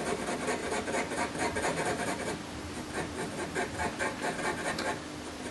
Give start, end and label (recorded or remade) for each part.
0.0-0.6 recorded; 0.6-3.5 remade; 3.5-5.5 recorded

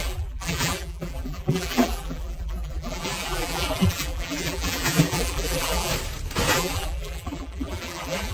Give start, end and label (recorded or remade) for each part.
0.0-5.9 remade; 5.9-6.5 recorded; 6.5-8.3 remade

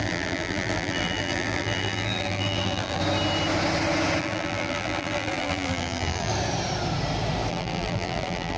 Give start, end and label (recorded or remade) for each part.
0.0-3.0 remade; 3.0-4.2 recorded; 4.2-6.3 remade; 6.3-7.5 recorded; 7.5-8.6 remade

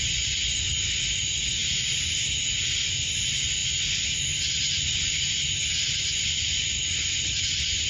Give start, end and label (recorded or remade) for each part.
0.0-1.6 recorded; 1.6-2.1 remade; 2.1-7.9 recorded